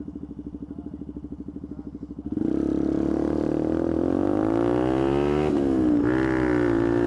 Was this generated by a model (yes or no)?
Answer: no